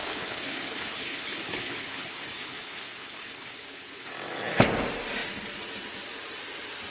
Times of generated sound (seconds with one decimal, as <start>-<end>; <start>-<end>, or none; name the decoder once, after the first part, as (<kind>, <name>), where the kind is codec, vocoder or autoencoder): 0.0-4.1 (codec, HILCodec)